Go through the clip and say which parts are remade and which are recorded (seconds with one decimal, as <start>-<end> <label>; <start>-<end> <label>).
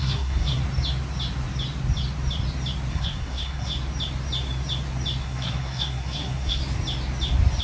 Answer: 0.0-0.6 remade; 0.6-2.9 recorded; 2.9-3.7 remade; 3.7-5.2 recorded; 5.2-6.6 remade; 6.6-7.6 recorded